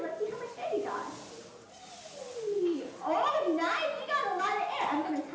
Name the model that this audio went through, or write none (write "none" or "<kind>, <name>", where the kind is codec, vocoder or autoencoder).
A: none